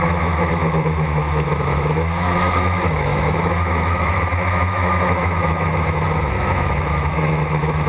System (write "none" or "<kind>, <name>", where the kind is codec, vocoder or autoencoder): autoencoder, DAC-VAE